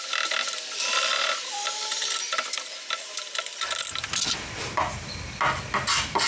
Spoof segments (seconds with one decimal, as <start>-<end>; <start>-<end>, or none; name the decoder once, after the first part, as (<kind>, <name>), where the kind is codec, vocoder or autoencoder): none